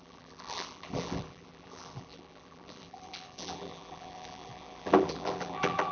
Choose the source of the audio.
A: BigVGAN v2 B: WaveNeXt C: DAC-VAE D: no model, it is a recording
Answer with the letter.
A